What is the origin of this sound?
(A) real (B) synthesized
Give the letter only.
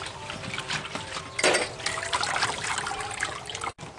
A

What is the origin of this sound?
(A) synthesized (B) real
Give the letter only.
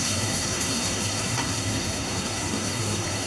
A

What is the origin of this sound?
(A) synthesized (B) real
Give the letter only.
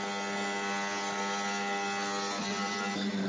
B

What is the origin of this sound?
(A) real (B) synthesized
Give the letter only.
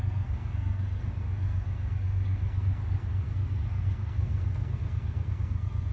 B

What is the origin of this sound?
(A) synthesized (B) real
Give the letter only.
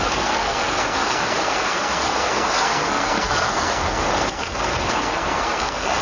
A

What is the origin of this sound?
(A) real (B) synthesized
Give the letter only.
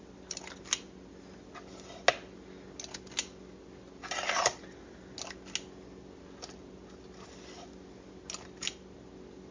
A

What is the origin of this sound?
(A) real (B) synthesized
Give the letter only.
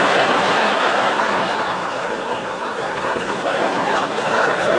B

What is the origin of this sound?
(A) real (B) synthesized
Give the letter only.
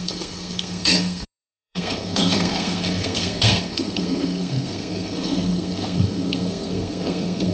B